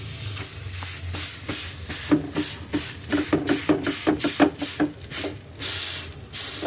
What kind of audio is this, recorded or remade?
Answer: recorded